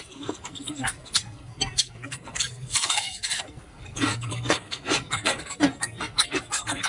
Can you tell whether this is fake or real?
fake